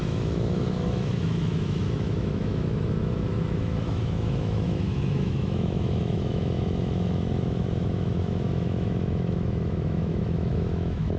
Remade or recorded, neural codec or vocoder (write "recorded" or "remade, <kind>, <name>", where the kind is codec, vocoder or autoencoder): remade, autoencoder, DAC-VAE